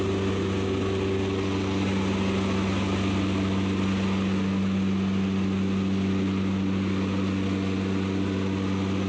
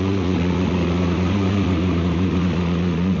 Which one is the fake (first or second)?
second